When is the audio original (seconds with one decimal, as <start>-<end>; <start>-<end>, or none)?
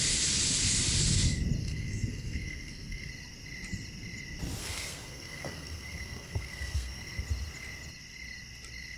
0.0-1.6; 3.1-4.6; 7.2-9.0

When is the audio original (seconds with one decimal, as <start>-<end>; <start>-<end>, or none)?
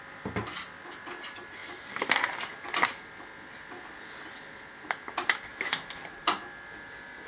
0.0-1.6; 2.2-5.5; 6.2-7.3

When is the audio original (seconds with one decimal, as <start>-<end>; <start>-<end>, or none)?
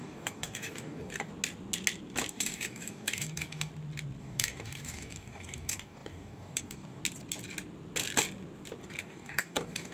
1.3-2.3; 3.7-4.2; 7.0-9.0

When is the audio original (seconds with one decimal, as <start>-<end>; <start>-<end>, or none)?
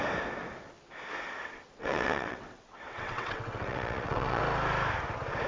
0.0-1.4; 4.4-5.5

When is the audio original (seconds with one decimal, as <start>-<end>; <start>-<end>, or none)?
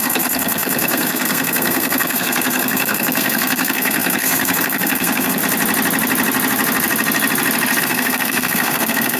5.4-7.8